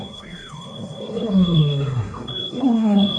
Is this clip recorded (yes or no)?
no